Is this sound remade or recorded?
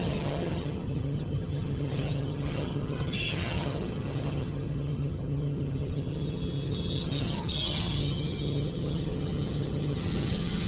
remade